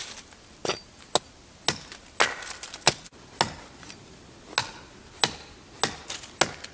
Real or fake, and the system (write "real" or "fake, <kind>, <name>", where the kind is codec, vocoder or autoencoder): real